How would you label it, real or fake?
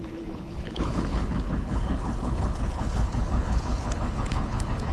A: fake